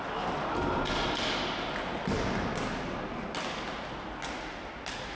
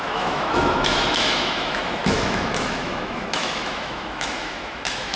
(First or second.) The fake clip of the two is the second